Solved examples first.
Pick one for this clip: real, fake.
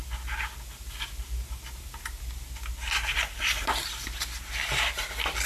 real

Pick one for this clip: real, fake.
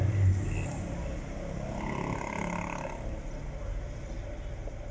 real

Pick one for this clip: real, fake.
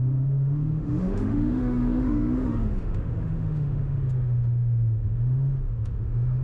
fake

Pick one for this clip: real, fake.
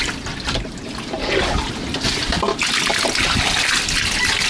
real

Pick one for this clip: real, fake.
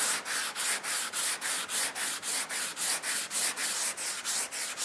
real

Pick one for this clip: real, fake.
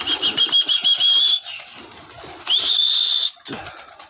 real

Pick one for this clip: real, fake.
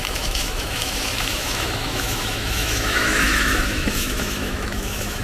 fake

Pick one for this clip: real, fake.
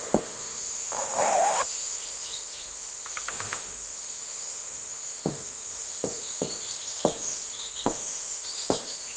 fake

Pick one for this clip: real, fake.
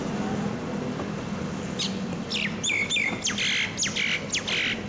real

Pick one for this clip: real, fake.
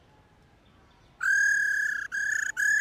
real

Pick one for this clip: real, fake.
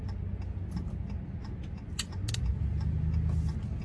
real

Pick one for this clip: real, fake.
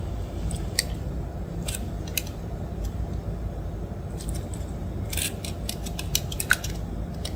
real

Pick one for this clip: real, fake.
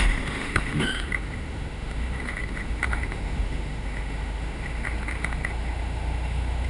fake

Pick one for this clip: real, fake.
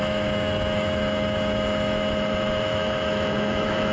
fake